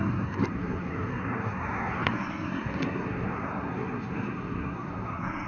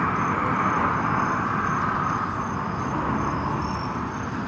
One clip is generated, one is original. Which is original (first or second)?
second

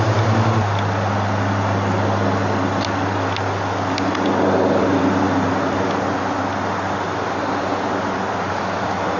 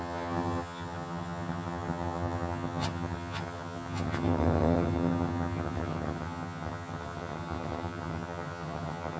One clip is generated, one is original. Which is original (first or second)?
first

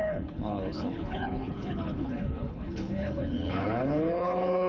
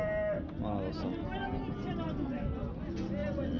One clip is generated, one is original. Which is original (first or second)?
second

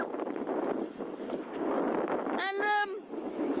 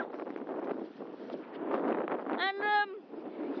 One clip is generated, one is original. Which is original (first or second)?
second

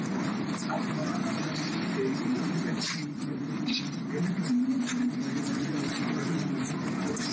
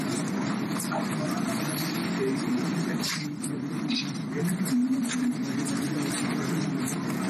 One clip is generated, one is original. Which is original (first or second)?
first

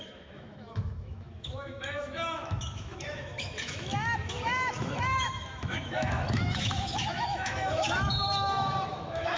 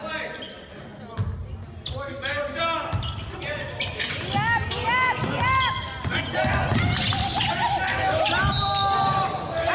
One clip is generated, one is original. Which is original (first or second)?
second